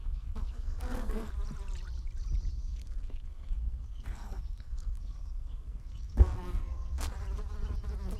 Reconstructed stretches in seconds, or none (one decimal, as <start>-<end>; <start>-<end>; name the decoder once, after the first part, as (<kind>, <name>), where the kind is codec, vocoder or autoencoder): 0.0-1.3 (codec, SNAC); 2.6-7.1